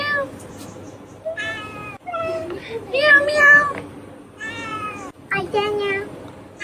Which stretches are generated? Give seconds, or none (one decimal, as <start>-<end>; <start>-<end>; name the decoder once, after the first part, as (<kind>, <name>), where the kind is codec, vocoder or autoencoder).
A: 1.8-3.4 (vocoder, BigVGAN v2); 4.7-5.4